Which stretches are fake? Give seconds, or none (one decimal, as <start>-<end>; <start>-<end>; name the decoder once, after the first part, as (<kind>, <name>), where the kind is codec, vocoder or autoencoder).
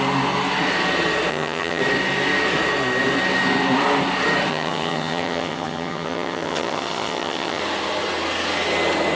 1.3-1.8 (vocoder, HiFi-GAN); 4.5-7.6